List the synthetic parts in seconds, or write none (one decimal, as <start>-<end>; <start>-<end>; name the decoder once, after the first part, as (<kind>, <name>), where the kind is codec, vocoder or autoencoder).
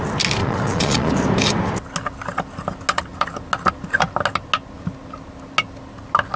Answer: 0.4-1.1 (vocoder, Vocos)